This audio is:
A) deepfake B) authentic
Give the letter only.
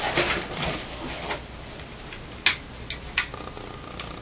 B